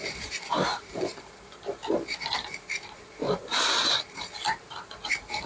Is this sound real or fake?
fake